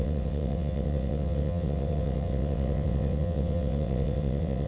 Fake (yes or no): yes